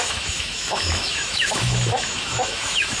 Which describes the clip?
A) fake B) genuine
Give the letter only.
A